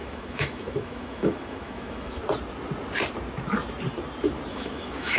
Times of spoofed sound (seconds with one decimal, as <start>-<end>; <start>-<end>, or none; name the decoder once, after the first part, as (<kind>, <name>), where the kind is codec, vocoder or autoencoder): 0.0-2.2 (autoencoder, DAC-VAE); 4.5-5.2